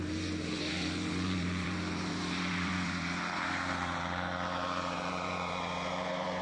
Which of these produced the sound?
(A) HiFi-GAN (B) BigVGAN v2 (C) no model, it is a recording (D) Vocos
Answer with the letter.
B